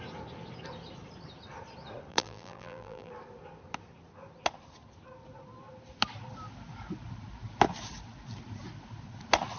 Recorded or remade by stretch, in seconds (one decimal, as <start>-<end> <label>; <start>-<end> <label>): 0.0-2.1 recorded; 2.1-3.1 remade; 3.1-9.6 recorded